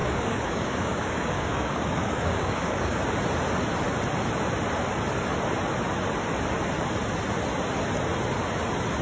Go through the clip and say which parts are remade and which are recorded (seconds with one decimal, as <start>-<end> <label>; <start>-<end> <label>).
0.0-3.0 remade; 3.0-9.0 recorded